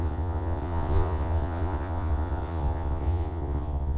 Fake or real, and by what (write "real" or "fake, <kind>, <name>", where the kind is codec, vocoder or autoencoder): fake, vocoder, Vocos